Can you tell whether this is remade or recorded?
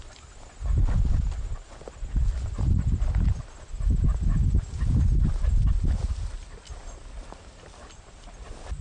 recorded